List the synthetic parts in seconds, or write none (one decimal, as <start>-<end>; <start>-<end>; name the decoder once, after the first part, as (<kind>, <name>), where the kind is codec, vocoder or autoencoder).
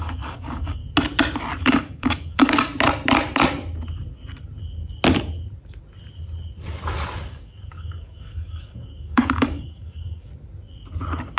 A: 0.0-0.8 (codec, DAC); 1.6-2.7; 7.3-10.3